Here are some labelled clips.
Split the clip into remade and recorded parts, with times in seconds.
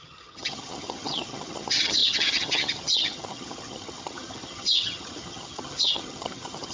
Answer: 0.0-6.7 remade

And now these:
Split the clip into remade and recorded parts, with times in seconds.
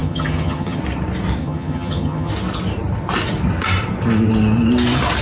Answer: 0.0-0.8 remade; 0.8-1.4 recorded; 1.4-2.3 remade; 2.3-5.2 recorded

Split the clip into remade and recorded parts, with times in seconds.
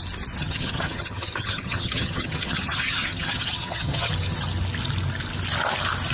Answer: 0.0-0.4 recorded; 0.4-4.1 remade; 4.1-6.1 recorded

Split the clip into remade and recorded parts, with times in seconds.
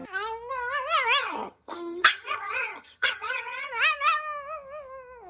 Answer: 0.0-1.2 recorded; 1.2-3.7 remade; 3.7-5.3 recorded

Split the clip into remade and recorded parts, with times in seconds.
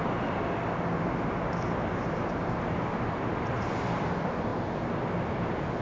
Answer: 0.0-5.8 recorded